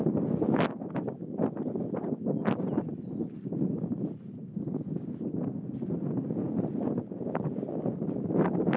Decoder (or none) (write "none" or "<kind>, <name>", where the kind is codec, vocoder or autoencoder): none